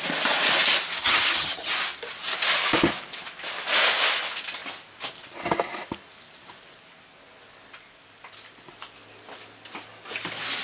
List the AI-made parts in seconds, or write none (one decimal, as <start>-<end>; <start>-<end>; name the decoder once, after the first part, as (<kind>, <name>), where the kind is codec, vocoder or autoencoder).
1.0-1.7 (vocoder, HiFi-GAN)